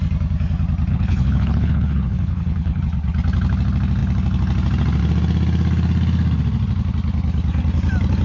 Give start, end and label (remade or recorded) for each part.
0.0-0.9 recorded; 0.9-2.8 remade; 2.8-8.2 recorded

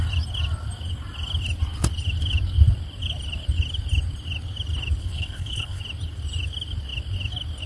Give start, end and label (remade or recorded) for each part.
0.0-5.0 recorded; 5.0-5.8 remade; 5.8-7.7 recorded

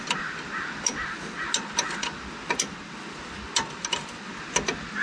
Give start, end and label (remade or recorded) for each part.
0.0-5.0 recorded

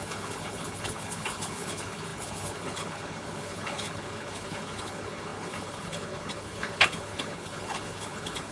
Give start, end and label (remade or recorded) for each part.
0.0-8.5 remade

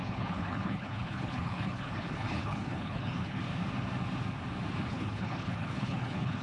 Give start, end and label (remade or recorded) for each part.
0.0-3.4 remade; 3.4-4.9 recorded; 4.9-6.4 remade

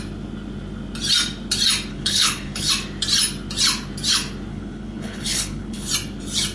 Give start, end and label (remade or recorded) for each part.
0.0-1.9 recorded; 1.9-2.7 remade; 2.7-4.5 recorded; 4.5-5.9 remade; 5.9-6.5 recorded

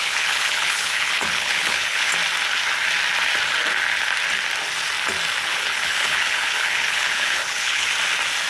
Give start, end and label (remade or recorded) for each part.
0.0-2.1 remade; 2.1-5.4 recorded; 5.4-7.9 remade; 7.9-8.5 recorded